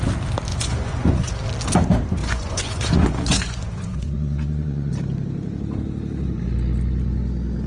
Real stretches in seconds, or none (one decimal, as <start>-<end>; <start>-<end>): 0.0-0.5; 1.3-2.2; 4.9-7.7